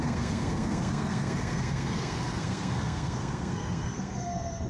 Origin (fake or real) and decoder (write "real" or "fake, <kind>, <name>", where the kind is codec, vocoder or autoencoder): fake, codec, SNAC